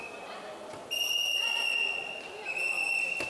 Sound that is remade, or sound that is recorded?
recorded